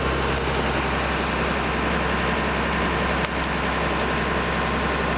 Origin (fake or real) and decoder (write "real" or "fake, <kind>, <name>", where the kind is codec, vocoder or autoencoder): real